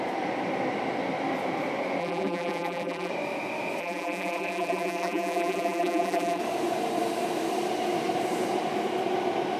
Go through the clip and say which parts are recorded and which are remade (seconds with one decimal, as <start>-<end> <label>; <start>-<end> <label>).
0.0-2.0 recorded; 2.0-3.1 remade; 3.1-3.8 recorded; 3.8-6.4 remade; 6.4-9.6 recorded